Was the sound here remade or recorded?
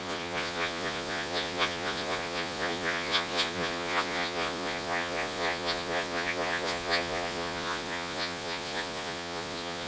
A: remade